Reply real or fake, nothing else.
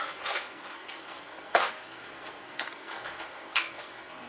fake